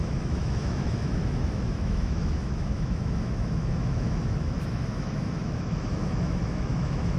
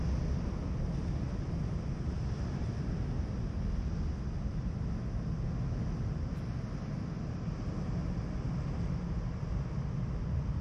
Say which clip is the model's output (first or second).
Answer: first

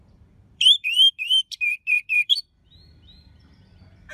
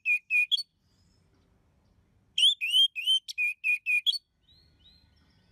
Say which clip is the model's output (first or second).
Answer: first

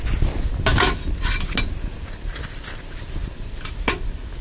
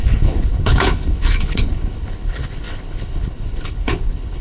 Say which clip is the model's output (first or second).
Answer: second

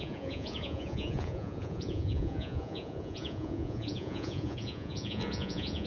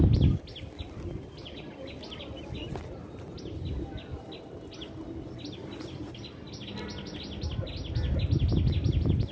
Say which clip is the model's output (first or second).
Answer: first